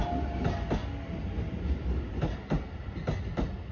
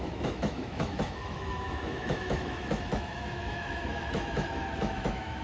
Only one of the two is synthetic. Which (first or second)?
second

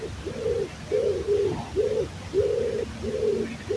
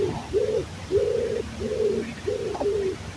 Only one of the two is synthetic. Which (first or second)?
second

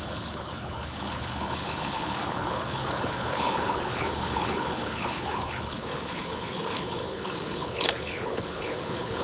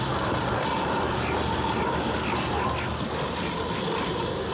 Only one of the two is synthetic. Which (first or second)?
first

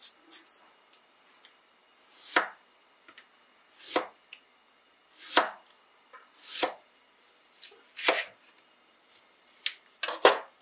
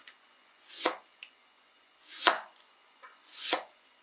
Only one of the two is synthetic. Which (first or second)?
second